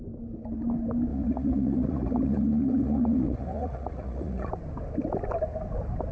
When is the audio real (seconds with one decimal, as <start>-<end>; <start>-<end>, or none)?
0.0-1.1; 4.5-6.1